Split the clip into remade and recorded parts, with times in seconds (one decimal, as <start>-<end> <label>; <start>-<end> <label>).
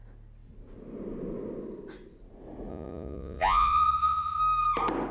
0.0-2.7 recorded; 2.7-4.4 remade; 4.4-5.1 recorded